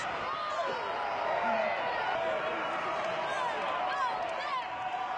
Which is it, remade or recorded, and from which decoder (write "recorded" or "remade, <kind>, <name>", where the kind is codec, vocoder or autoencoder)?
recorded